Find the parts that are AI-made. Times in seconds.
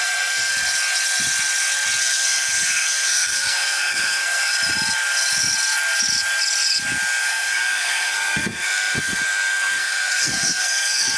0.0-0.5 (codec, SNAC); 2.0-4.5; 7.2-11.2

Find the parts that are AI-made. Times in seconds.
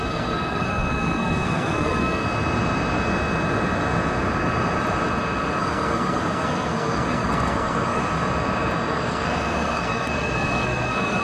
0.0-2.2 (codec, SNAC); 5.6-8.0; 8.9-11.2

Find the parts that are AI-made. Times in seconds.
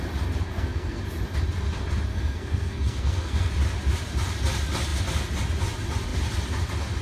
0.5-1.0 (codec, SNAC); 2.1-3.5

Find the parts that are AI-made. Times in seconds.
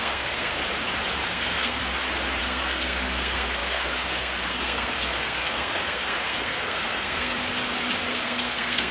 0.0-0.6 (codec, SNAC); 1.3-1.8; 2.4-7.5; 8.1-8.9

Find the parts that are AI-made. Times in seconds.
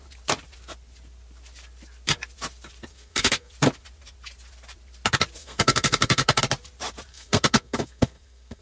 2.9-3.5 (codec, SNAC); 5.4-6.4; 7.1-8.6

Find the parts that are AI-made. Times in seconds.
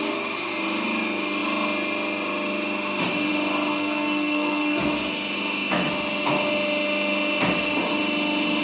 3.7-4.8 (codec, SNAC)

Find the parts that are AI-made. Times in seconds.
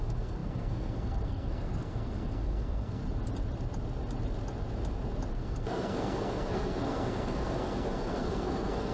0.0-3.0 (codec, SNAC); 5.3-8.9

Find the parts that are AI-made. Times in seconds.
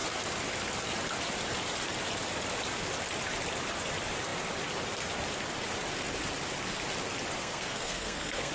7.4-8.5 (codec, SNAC)